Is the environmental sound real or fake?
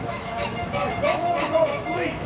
fake